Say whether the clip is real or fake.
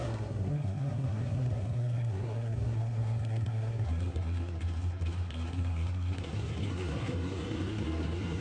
fake